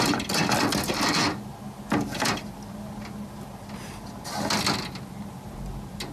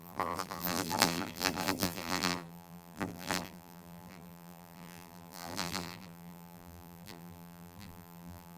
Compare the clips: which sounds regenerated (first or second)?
second